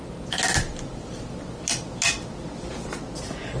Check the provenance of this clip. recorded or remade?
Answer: recorded